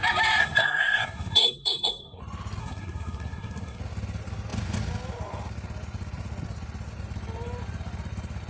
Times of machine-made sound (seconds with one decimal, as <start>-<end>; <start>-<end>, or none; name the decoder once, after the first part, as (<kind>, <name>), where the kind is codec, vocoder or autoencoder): 0.4-2.2 (codec, SNAC); 2.6-3.8

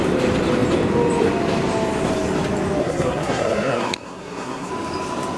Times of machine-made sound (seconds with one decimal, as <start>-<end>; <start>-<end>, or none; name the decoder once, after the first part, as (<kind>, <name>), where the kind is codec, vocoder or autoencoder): 2.8-4.7 (codec, SNAC)